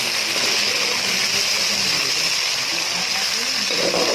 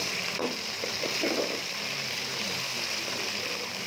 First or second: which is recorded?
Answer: first